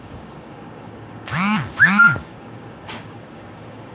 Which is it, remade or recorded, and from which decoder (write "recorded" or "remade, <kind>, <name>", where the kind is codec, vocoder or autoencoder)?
remade, codec, DAC